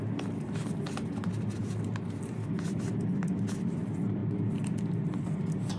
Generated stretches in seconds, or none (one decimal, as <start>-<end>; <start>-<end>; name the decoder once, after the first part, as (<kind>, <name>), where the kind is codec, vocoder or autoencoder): none